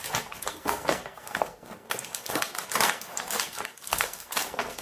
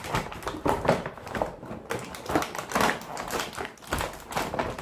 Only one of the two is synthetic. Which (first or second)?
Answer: first